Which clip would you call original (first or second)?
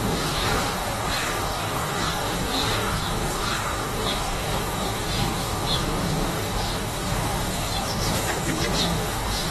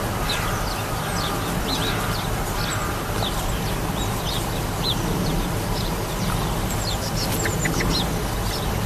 second